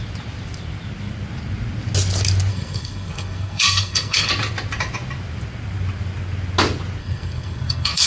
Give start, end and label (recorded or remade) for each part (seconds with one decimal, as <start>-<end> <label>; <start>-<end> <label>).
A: 0.0-2.5 recorded; 2.5-4.3 remade; 4.3-7.0 recorded; 7.0-8.1 remade

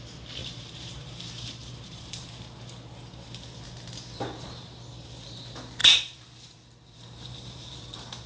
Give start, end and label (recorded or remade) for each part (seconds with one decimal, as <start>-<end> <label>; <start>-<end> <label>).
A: 0.0-0.4 recorded; 0.4-2.3 remade; 2.3-5.8 recorded; 5.8-7.7 remade; 7.7-8.3 recorded

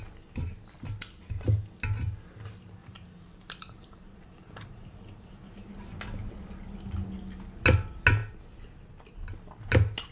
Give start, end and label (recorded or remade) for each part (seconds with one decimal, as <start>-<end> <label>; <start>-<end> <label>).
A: 0.0-2.8 recorded; 2.8-5.7 remade; 5.7-10.1 recorded

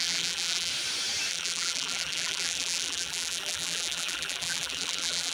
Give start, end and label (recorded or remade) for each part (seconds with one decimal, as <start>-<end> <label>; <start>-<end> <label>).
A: 0.0-0.7 remade; 0.7-1.3 recorded; 1.3-5.3 remade

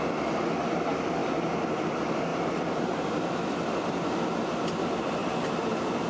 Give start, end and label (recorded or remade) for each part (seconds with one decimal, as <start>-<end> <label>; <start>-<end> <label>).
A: 0.0-2.3 recorded; 2.3-4.1 remade; 4.1-6.1 recorded

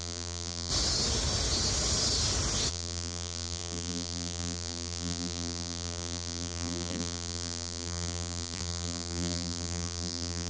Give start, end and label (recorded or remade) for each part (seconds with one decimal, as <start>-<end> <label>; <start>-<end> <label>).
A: 0.0-0.7 remade; 0.7-2.7 recorded; 2.7-10.5 remade